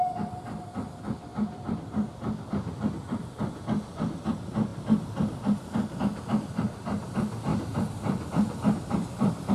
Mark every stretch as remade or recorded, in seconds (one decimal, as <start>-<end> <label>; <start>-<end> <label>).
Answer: 0.0-1.3 recorded; 1.3-2.1 remade; 2.1-7.5 recorded; 7.5-9.5 remade